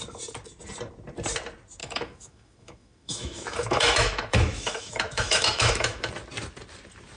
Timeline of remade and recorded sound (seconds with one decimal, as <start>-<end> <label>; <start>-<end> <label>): 0.0-1.8 recorded; 1.8-6.1 remade; 6.1-7.2 recorded